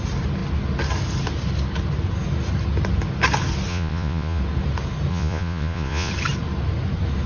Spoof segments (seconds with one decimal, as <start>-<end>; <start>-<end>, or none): 3.7-4.4; 5.1-6.1